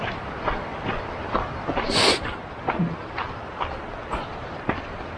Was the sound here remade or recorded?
recorded